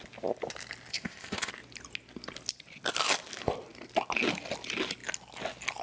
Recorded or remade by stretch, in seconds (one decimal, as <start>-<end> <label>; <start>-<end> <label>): 0.0-0.9 recorded; 0.9-1.5 remade; 1.5-5.8 recorded